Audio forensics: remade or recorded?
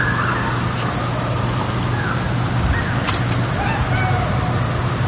recorded